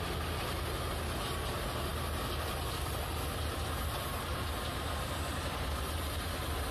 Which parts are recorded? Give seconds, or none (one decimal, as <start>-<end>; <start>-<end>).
0.0-6.7